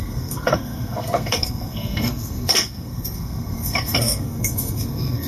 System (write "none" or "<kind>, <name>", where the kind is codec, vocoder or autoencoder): codec, SNAC